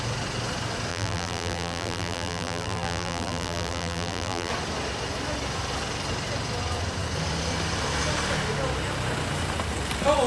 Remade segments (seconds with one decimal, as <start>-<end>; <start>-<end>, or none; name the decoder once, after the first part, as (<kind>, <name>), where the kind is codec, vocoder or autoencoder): 0.9-4.5 (vocoder, BigVGAN v2)